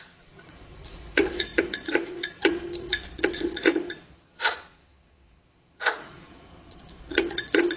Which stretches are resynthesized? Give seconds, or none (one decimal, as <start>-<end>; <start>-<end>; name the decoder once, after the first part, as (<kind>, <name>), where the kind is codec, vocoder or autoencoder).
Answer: 0.0-7.8 (vocoder, Vocos)